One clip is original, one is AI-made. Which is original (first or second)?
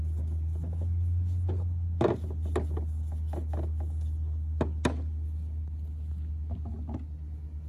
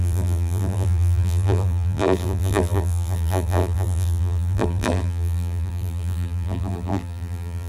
first